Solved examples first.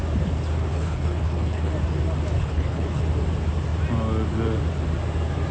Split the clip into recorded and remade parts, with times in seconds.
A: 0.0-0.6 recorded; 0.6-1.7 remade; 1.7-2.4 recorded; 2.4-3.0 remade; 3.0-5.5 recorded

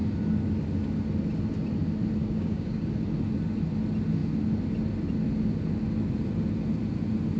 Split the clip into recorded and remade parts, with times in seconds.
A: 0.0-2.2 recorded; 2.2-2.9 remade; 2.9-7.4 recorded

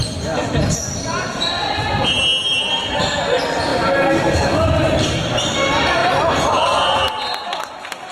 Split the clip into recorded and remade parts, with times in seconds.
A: 0.0-8.1 recorded

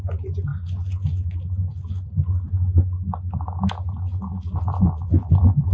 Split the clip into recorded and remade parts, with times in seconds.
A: 0.0-5.7 recorded